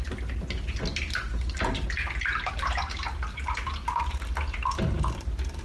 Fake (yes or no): no